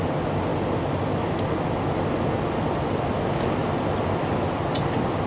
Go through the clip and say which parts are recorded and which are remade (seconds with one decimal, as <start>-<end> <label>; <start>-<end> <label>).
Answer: 0.0-5.3 recorded